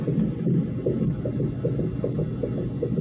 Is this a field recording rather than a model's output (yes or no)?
yes